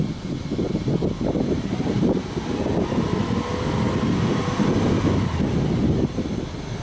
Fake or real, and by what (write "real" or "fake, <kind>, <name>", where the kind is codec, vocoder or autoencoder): real